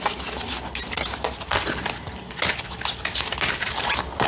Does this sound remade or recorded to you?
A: recorded